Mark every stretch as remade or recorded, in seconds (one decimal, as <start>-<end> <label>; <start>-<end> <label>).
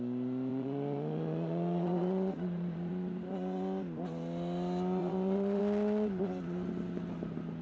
0.0-0.5 recorded; 0.5-2.9 remade; 2.9-5.0 recorded; 5.0-5.6 remade; 5.6-7.6 recorded